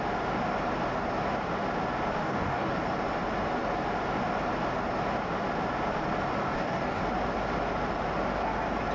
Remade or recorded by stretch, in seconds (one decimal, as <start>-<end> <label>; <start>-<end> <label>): 0.0-2.2 recorded; 2.2-2.7 remade; 2.7-6.4 recorded; 6.4-7.0 remade; 7.0-8.9 recorded